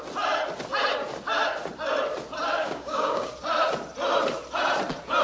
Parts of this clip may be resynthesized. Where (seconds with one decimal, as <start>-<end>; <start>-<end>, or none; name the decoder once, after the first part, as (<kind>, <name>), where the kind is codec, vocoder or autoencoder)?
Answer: 2.6-3.3 (codec, DAC)